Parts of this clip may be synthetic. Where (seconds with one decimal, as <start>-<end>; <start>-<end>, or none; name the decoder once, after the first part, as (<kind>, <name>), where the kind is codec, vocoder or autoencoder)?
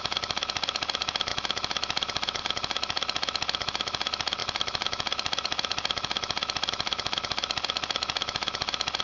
0.0-9.0 (autoencoder, DAC-VAE)